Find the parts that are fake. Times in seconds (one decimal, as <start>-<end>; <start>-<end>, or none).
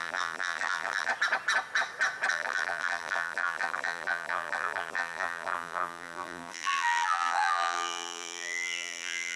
0.0-1.1; 2.3-9.4